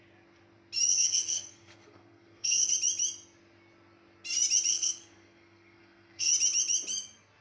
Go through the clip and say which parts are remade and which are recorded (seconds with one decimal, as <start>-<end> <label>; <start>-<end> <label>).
0.0-0.9 recorded; 0.9-2.7 remade; 2.7-4.7 recorded; 4.7-6.3 remade; 6.3-7.4 recorded